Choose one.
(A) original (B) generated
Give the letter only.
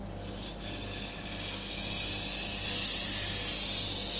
A